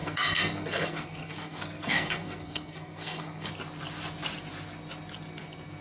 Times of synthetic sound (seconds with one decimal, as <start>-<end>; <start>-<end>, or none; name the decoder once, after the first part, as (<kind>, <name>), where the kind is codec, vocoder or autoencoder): 0.0-3.5 (codec, SNAC)